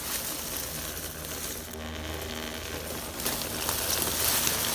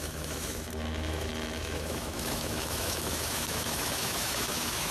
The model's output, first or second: second